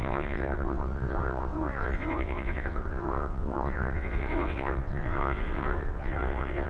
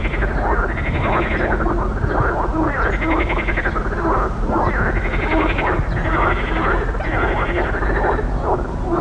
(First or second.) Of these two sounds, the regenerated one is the first